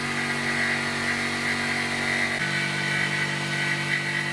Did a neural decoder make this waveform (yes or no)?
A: no